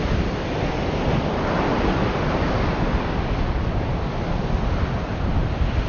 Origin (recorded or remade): recorded